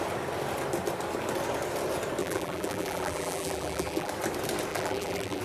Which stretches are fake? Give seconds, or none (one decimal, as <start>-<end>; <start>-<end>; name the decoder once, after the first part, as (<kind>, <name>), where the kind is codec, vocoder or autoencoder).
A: 2.2-4.1 (vocoder, BigVGAN v2); 4.7-5.4